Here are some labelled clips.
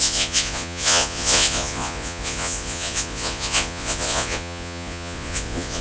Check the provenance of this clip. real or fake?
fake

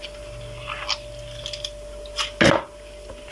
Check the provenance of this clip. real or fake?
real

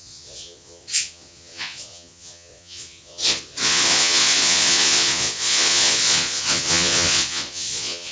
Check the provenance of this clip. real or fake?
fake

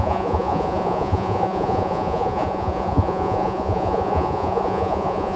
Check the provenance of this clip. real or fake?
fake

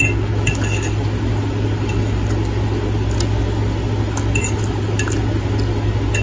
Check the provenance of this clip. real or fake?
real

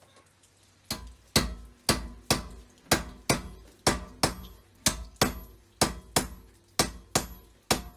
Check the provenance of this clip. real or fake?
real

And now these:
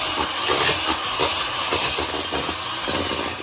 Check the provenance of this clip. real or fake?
real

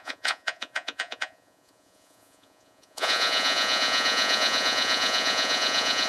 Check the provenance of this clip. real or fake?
fake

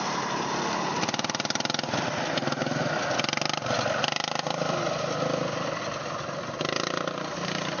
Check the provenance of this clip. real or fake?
real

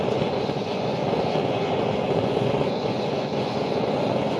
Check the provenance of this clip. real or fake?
fake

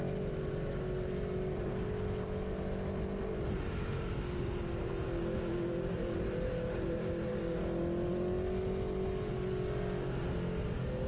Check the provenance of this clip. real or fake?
real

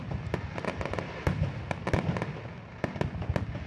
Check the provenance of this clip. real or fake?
real